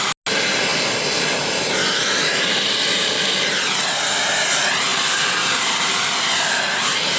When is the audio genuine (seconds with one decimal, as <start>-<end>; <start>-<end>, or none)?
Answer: 0.0-7.2